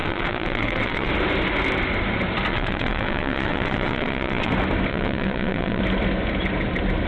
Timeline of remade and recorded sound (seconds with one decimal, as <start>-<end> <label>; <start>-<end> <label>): 0.0-1.1 remade; 1.1-2.5 recorded; 2.5-4.5 remade; 4.5-4.9 recorded; 4.9-5.8 remade; 5.8-7.1 recorded